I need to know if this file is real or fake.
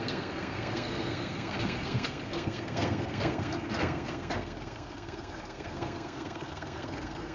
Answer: fake